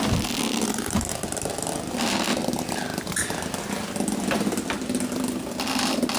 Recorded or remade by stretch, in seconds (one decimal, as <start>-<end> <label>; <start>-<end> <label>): 0.0-6.2 recorded